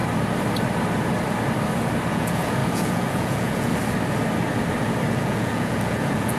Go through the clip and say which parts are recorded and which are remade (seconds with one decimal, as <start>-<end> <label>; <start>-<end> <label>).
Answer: 0.0-2.1 recorded; 2.1-3.7 remade; 3.7-5.1 recorded; 5.1-6.4 remade